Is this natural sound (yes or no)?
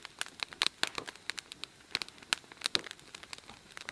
yes